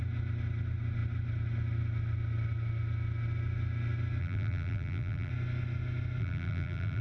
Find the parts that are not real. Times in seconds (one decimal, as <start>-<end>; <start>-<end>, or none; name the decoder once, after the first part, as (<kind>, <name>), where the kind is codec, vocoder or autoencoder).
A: 4.2-5.3 (vocoder, BigVGAN v2); 6.2-7.0

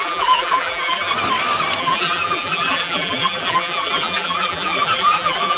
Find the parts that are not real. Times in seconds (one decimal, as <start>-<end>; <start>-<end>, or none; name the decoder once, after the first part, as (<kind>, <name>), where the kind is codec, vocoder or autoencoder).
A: 0.0-1.1 (vocoder, BigVGAN v2); 1.8-5.6

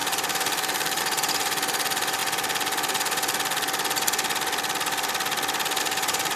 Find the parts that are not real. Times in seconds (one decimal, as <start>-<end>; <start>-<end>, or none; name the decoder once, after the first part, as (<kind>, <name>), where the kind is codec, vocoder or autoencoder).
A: 0.0-2.2 (vocoder, BigVGAN v2); 5.8-6.4